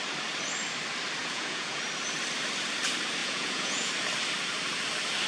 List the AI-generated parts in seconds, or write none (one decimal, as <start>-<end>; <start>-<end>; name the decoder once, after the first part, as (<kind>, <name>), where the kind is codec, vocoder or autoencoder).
1.2-1.8 (vocoder, Vocos); 3.2-3.9